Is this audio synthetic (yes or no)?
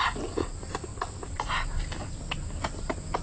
no